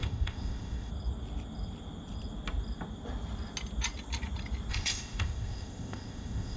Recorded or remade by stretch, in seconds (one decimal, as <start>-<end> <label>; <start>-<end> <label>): 0.0-0.9 remade; 0.9-4.7 recorded; 4.7-6.6 remade